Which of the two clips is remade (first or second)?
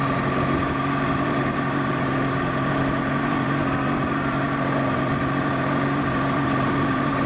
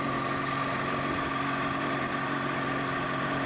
first